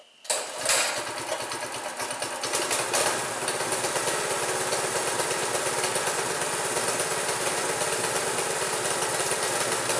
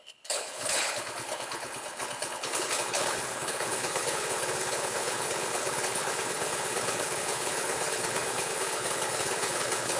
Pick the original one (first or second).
first